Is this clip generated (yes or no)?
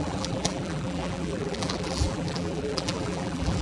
yes